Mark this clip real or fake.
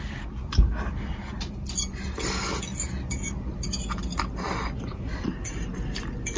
real